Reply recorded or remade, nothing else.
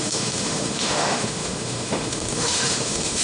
remade